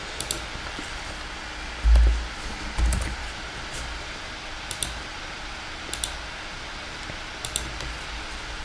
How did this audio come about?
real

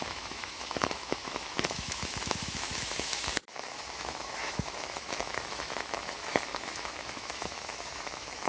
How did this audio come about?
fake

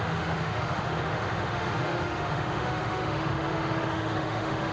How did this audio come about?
fake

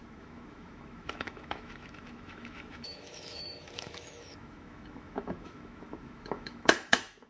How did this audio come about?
fake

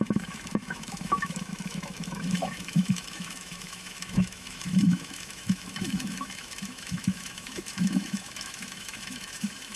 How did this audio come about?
fake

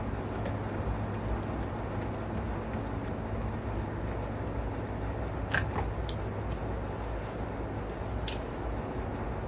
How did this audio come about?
real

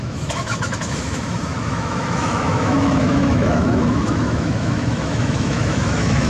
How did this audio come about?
fake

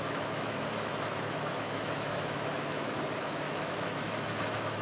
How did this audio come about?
fake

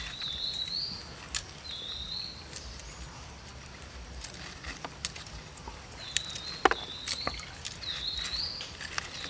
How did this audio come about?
real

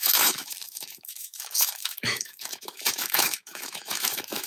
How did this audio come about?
fake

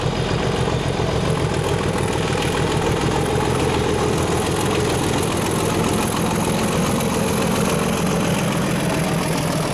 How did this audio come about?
real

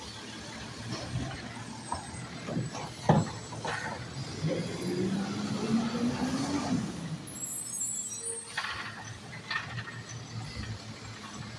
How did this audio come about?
real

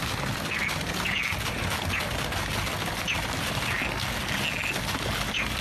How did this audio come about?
real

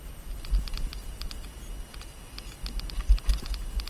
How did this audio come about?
real